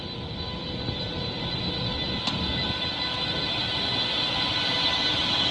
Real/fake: real